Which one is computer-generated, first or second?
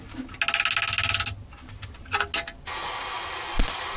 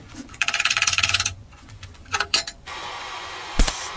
second